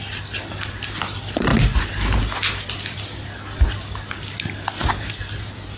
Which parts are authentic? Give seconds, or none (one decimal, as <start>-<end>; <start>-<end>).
0.0-5.8